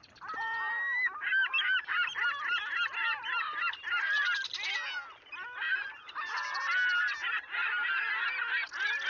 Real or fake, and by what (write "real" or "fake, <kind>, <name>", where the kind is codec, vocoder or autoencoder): real